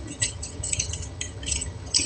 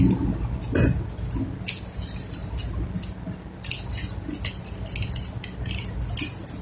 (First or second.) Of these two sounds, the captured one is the second